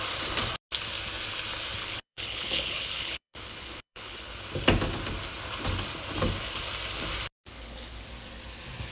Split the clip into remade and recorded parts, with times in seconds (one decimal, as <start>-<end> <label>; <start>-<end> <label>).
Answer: 0.0-1.8 recorded; 1.8-4.3 remade; 4.3-7.5 recorded; 7.5-8.0 remade; 8.0-8.9 recorded